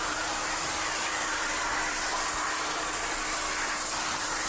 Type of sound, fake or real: fake